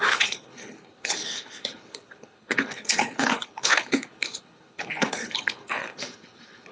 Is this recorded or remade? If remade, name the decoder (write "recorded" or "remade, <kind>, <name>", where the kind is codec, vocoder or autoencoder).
remade, codec, HILCodec